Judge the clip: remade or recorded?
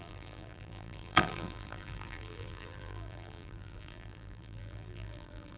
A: remade